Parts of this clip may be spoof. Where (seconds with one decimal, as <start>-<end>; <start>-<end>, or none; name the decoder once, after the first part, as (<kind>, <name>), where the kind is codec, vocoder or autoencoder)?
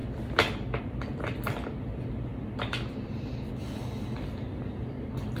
none